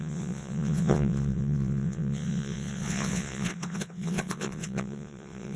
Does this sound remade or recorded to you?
remade